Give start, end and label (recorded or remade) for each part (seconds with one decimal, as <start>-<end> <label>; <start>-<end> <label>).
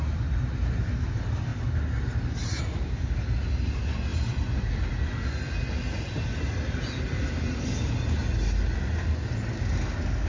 0.0-10.3 recorded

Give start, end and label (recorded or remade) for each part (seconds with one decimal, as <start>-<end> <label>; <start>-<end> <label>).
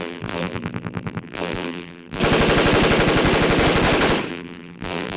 0.0-2.2 remade; 2.2-4.3 recorded; 4.3-5.2 remade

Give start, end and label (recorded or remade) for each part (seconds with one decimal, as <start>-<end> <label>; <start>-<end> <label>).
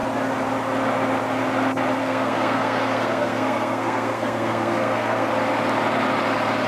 0.0-2.0 recorded; 2.0-5.3 remade; 5.3-6.7 recorded